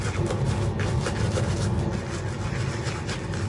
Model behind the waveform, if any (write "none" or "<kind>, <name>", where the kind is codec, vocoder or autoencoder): none